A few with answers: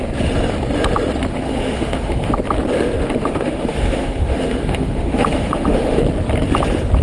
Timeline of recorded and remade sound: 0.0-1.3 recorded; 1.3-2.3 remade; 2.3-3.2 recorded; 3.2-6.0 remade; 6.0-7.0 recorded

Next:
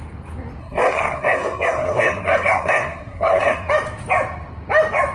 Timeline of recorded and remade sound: 0.0-0.6 recorded; 0.6-3.7 remade; 3.7-5.1 recorded

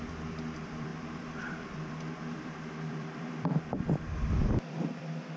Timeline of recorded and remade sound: 0.0-5.4 remade